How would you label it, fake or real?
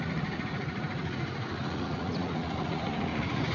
fake